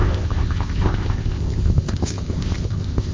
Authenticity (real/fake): fake